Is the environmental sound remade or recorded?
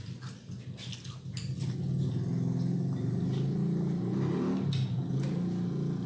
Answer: recorded